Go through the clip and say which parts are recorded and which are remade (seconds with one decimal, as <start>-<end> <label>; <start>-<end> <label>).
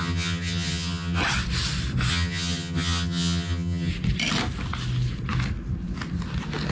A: 0.0-1.2 remade; 1.2-2.1 recorded; 2.1-3.9 remade; 3.9-6.7 recorded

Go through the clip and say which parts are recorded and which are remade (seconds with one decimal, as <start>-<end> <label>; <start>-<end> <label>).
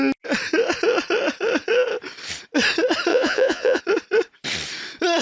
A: 0.0-3.1 recorded; 3.1-3.8 remade; 3.8-5.2 recorded